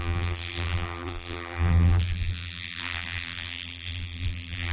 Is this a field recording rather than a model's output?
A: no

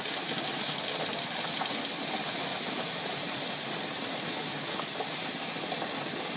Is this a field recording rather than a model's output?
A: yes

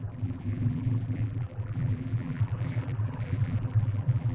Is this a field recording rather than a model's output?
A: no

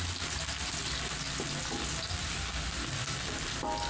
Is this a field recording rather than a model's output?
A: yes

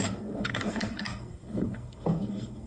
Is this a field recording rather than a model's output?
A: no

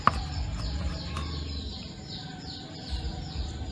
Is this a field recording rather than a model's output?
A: yes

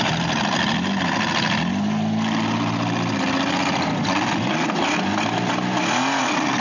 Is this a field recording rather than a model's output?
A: yes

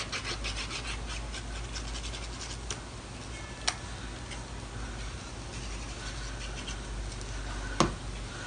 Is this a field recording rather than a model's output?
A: yes